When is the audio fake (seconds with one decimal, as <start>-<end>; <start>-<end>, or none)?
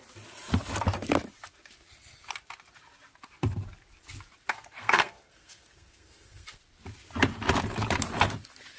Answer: 4.8-6.6